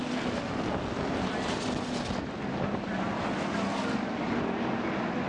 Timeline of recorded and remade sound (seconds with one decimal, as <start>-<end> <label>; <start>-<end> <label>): 0.0-5.3 recorded